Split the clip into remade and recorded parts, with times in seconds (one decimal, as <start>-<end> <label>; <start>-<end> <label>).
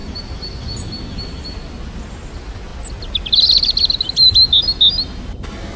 0.0-5.8 recorded